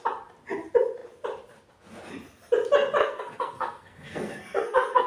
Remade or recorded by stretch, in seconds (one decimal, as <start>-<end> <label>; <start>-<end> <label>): 0.0-3.0 recorded; 3.0-5.1 remade